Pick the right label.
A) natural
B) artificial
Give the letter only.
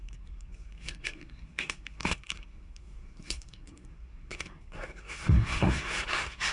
B